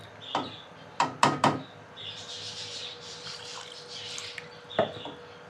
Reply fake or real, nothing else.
fake